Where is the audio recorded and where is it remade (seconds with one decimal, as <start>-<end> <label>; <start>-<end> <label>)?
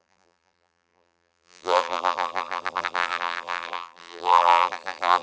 0.0-5.2 remade